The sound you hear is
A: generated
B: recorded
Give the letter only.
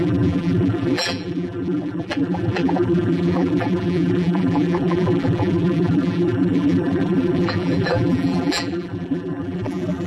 A